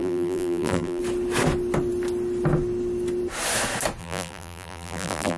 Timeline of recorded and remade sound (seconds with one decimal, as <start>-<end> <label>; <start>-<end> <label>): 0.0-1.0 remade; 1.0-4.0 recorded; 4.0-5.4 remade